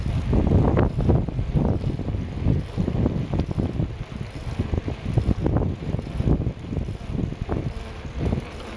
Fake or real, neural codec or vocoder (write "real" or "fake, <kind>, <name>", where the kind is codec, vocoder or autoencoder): real